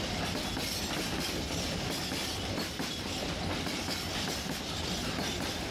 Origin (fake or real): real